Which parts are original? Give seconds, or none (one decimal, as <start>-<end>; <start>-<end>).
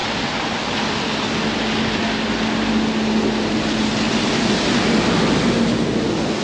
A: 0.0-6.4